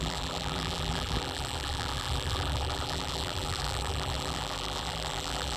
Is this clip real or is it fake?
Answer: fake